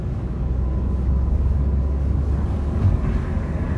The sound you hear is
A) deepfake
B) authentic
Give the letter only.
A